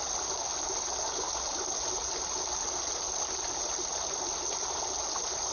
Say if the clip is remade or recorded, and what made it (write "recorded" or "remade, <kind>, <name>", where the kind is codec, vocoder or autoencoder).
recorded